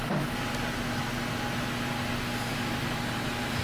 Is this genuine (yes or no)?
yes